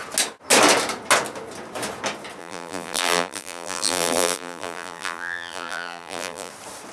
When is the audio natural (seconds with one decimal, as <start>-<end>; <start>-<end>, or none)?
0.0-2.4; 6.5-6.9

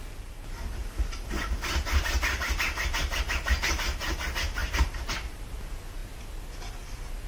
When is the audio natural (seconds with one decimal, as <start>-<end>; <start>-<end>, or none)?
0.0-0.8; 1.5-4.6; 5.6-7.3

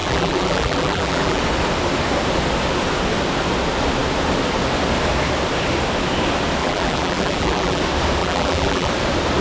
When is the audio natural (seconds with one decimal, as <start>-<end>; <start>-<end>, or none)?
1.4-6.6; 7.8-8.2; 8.9-9.4